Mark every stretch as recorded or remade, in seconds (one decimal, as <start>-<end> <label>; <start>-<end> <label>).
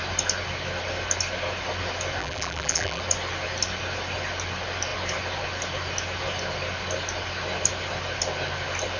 0.0-2.2 recorded; 2.2-3.0 remade; 3.0-9.0 recorded